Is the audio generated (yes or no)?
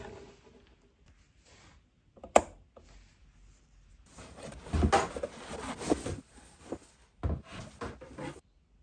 no